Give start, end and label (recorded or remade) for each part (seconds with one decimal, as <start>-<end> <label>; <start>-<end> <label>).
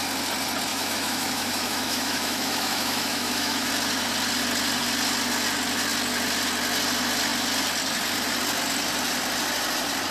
0.0-0.7 recorded; 0.7-3.7 remade; 3.7-10.1 recorded